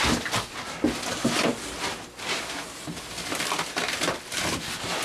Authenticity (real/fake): real